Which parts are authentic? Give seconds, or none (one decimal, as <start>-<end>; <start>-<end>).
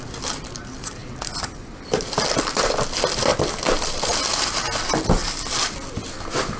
0.0-1.0; 2.9-6.6